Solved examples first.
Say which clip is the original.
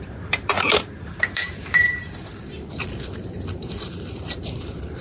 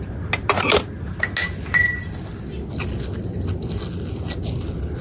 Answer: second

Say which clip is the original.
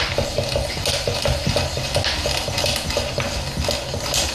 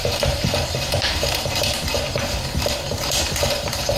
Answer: first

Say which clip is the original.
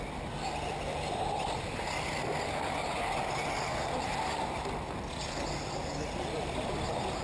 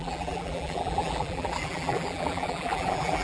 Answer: first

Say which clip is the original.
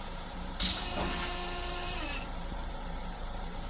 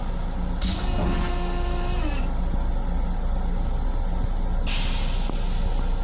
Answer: second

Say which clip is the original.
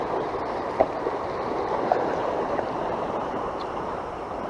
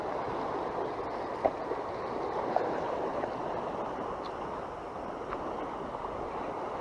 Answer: second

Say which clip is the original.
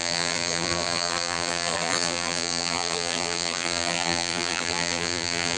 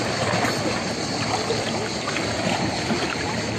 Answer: second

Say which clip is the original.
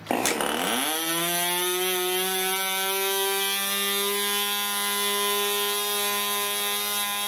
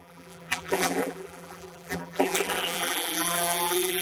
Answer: first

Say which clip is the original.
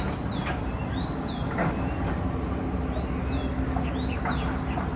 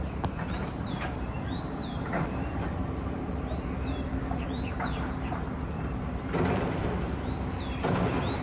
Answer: first